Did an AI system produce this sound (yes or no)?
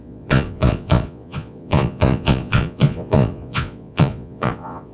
yes